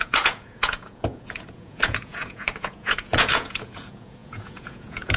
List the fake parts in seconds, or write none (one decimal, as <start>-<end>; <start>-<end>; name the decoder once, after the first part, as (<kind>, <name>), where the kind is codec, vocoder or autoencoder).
0.0-5.2 (vocoder, Vocos)